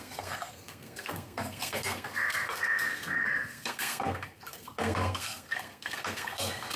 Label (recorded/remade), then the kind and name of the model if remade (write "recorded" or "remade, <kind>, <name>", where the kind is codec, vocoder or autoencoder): remade, codec, SNAC